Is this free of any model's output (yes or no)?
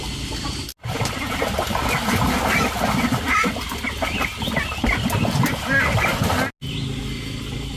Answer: yes